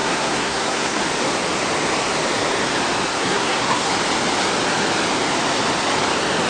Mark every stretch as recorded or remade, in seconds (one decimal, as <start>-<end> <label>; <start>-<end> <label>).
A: 0.0-1.0 remade; 1.0-3.1 recorded; 3.1-3.9 remade; 3.9-6.5 recorded